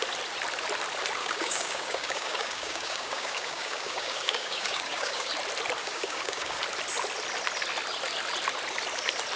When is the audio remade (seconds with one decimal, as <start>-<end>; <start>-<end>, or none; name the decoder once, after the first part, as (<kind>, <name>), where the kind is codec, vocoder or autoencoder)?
1.2-5.3 (codec, DAC); 5.8-6.6

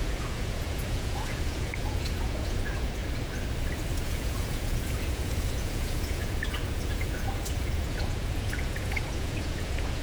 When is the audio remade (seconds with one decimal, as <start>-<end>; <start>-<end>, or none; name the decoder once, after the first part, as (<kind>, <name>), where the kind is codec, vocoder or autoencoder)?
0.0-3.0 (vocoder, Vocos); 3.9-10.0

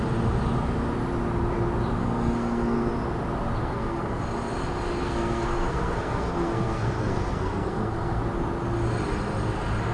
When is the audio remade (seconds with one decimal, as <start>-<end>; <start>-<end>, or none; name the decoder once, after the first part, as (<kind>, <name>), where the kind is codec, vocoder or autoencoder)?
2.0-2.9 (codec, SNAC); 3.6-4.2; 5.0-8.2

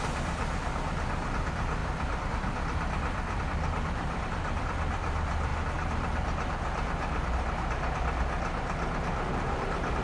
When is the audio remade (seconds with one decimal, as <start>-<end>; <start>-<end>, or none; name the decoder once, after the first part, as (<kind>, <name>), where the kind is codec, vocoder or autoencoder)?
0.0-5.5 (vocoder, BigVGAN v2); 9.3-10.0

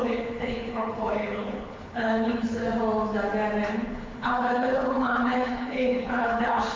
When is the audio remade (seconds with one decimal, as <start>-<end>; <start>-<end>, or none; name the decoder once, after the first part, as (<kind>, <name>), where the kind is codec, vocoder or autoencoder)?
0.0-2.6 (codec, HILCodec); 3.7-6.8